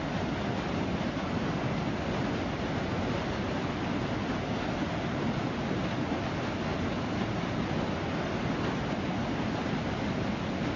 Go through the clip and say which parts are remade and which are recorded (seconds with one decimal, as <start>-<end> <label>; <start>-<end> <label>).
0.0-10.8 recorded